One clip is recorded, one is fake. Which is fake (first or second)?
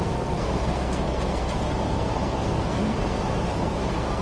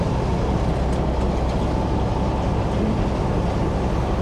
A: first